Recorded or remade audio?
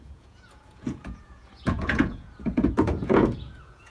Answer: remade